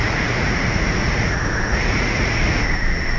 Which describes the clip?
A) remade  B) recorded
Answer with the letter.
A